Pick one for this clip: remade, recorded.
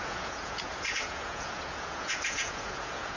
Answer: remade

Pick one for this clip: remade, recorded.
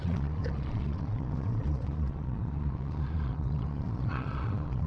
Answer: remade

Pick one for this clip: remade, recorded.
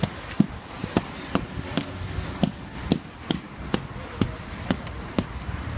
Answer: recorded